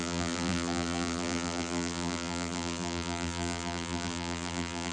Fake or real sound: fake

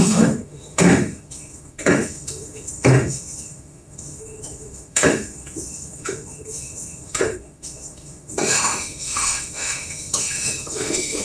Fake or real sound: fake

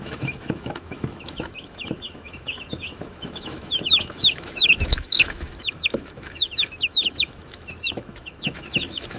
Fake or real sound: fake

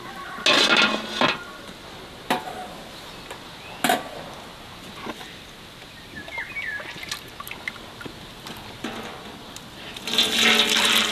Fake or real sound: real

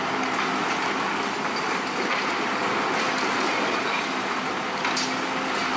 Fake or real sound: real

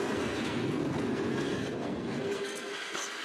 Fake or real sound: fake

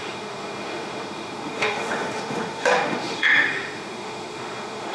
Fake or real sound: fake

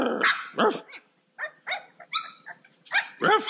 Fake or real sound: real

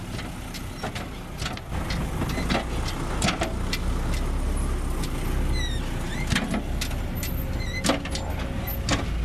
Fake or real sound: real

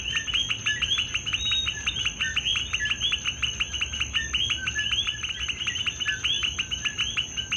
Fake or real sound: real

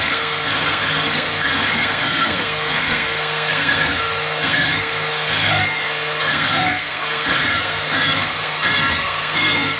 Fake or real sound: fake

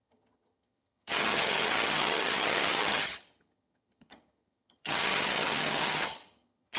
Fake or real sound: fake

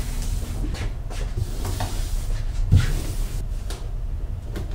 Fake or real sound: real